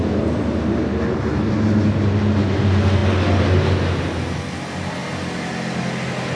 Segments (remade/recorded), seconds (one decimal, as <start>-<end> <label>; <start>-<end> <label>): 0.0-5.0 recorded; 5.0-5.5 remade; 5.5-6.4 recorded